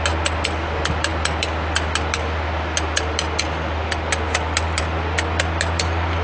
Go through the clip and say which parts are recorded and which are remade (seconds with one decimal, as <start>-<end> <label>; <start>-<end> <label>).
0.0-6.2 recorded